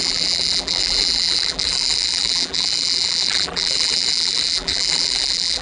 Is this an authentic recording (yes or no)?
no